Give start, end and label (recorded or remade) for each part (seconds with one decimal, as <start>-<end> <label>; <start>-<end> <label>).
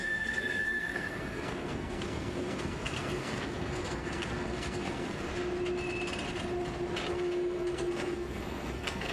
0.0-5.3 remade; 5.3-7.1 recorded; 7.1-9.1 remade